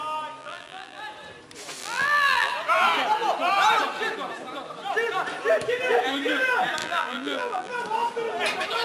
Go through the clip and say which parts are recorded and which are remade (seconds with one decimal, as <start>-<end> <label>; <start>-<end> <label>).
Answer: 0.0-0.4 recorded; 0.4-1.0 remade; 1.0-1.8 recorded; 1.8-2.5 remade; 2.5-6.8 recorded; 6.8-7.7 remade; 7.7-8.8 recorded